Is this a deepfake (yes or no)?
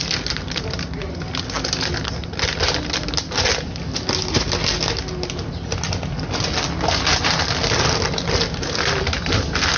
no